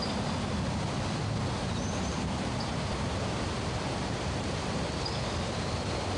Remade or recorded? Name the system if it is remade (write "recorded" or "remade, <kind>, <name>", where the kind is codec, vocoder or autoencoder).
recorded